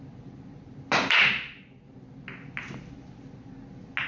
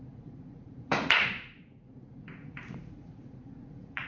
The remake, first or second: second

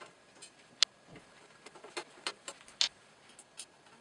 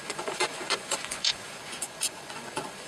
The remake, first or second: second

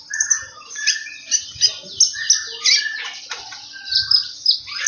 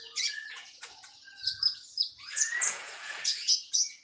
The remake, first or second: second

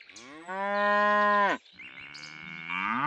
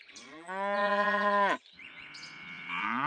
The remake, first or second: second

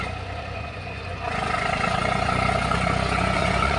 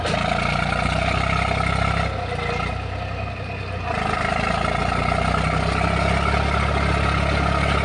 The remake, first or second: first